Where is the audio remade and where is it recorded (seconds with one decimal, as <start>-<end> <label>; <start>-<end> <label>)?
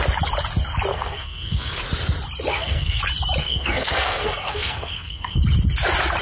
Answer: 0.0-0.9 recorded; 0.9-1.8 remade; 1.8-2.5 recorded; 2.5-3.0 remade; 3.0-3.4 recorded; 3.4-5.4 remade; 5.4-6.2 recorded